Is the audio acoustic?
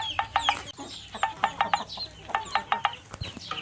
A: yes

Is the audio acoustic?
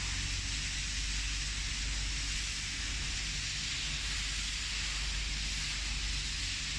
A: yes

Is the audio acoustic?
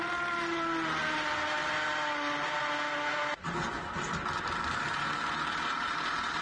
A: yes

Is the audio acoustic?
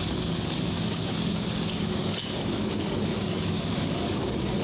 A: no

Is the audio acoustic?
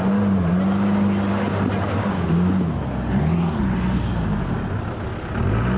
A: yes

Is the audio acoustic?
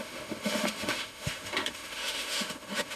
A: no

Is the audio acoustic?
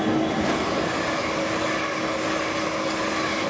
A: yes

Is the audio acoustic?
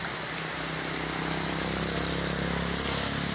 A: yes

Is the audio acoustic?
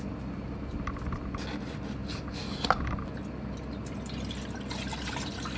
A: yes